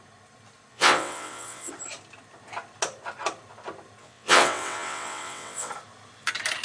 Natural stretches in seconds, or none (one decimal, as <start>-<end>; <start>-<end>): 0.0-0.7; 1.7-4.0; 5.7-6.6